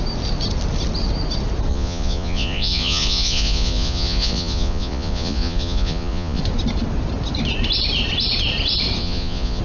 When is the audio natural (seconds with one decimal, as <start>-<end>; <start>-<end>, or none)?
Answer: 0.0-1.7; 6.4-9.0